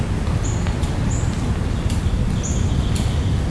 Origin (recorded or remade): recorded